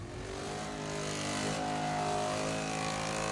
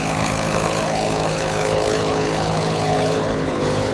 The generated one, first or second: second